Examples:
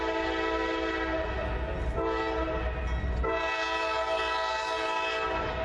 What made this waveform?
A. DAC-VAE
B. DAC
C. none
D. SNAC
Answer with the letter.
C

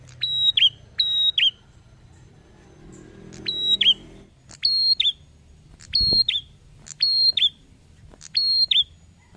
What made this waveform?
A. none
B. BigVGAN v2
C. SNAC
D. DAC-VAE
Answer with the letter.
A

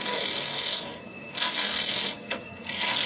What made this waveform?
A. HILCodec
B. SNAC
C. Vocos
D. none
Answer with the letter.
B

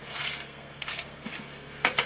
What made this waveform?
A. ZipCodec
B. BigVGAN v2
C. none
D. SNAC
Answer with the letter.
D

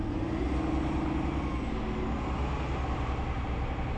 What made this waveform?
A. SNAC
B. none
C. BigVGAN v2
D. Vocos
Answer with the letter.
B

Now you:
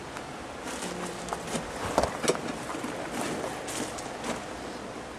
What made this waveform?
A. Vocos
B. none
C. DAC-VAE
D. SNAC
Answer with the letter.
B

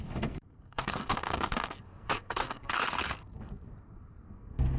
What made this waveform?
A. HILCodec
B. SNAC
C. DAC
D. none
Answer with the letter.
B